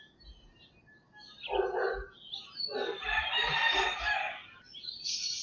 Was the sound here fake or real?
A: real